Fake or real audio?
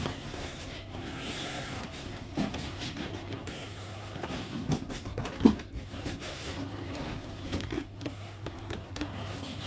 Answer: fake